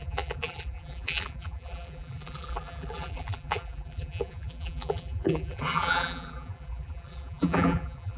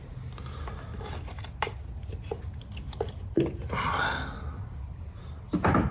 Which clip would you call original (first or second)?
second